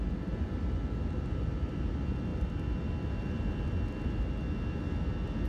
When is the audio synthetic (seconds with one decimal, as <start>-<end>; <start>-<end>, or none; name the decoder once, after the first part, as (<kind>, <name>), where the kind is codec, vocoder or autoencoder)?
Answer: none